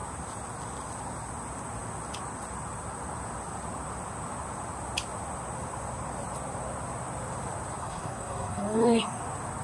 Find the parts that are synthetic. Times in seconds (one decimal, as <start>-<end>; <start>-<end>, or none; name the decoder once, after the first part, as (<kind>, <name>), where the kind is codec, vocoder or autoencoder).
7.8-9.2 (codec, SNAC)